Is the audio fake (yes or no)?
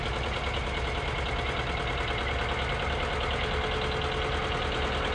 no